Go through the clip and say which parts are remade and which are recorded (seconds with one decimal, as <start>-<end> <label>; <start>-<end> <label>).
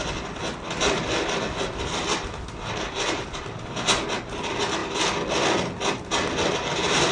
0.0-7.1 recorded